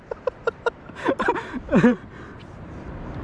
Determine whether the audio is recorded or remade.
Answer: recorded